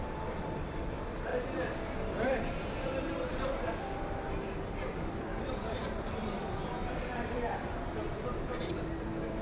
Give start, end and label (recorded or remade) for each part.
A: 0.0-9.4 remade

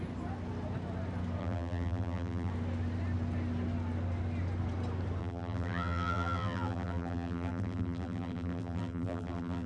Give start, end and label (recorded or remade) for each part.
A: 0.0-1.4 recorded; 1.4-2.5 remade; 2.5-5.2 recorded; 5.2-9.7 remade

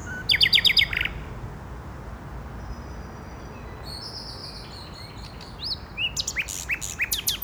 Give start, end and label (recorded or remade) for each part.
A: 0.0-7.4 recorded

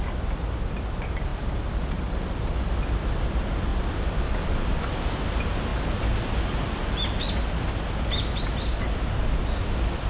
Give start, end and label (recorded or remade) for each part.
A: 0.0-1.3 recorded; 1.3-2.6 remade; 2.6-3.7 recorded; 3.7-5.2 remade; 5.2-10.1 recorded

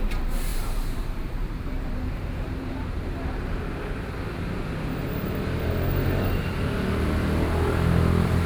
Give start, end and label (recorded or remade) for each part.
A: 0.0-0.5 recorded; 0.5-4.0 remade; 4.0-8.5 recorded